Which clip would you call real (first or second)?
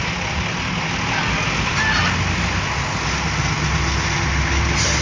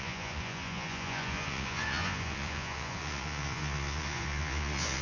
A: first